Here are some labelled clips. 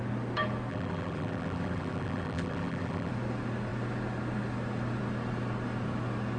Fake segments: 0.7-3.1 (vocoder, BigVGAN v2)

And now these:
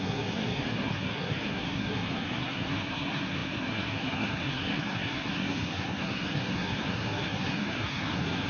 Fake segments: 0.0-8.5 (codec, SNAC)